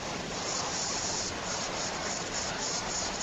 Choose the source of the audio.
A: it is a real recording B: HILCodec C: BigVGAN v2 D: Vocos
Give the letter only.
C